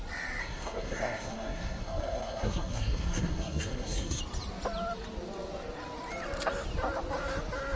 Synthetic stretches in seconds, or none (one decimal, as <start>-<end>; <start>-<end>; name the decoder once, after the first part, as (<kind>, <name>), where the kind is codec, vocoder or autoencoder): 0.4-4.2 (codec, SNAC)